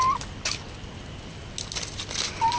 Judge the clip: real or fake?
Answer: real